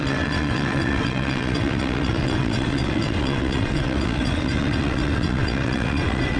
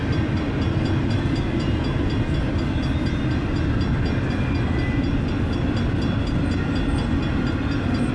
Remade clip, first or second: first